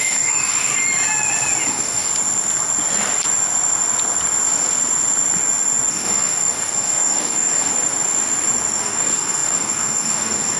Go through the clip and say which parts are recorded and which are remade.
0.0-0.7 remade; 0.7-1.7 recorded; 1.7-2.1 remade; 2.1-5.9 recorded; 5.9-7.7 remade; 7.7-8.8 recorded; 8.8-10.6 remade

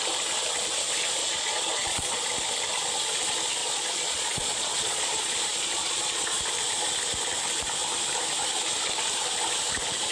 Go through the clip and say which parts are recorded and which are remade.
0.0-1.2 recorded; 1.2-2.3 remade; 2.3-3.6 recorded; 3.6-6.4 remade; 6.4-10.1 recorded

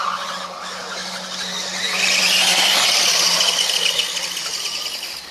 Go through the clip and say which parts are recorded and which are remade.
0.0-5.3 recorded

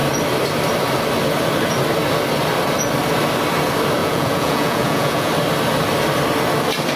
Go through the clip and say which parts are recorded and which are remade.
0.0-4.0 recorded; 4.0-5.3 remade; 5.3-7.0 recorded